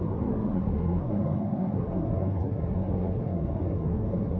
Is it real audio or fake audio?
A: fake